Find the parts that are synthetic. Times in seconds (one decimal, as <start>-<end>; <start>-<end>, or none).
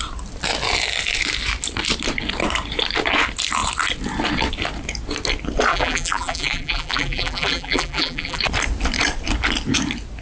5.7-8.4